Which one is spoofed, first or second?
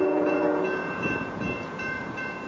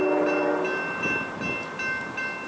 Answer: first